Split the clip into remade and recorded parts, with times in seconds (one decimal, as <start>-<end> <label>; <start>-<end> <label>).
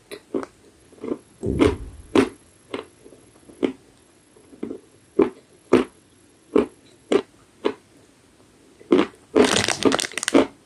0.0-0.8 recorded; 0.8-3.6 remade; 3.6-4.0 recorded; 4.0-7.2 remade; 7.2-10.7 recorded